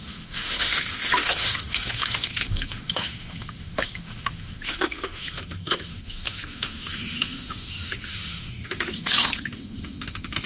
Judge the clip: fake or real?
fake